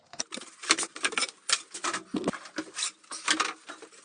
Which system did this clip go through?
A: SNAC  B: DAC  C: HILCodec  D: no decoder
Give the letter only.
D